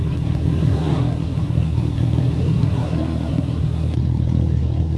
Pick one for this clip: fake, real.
fake